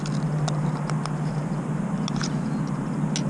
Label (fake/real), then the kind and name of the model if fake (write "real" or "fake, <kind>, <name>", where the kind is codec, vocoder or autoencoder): real